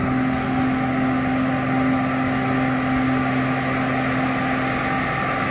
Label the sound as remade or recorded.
recorded